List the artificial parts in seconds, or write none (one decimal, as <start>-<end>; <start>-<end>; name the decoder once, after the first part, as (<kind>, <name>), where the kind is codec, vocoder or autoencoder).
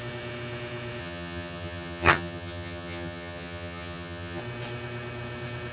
1.0-4.4 (vocoder, HiFi-GAN)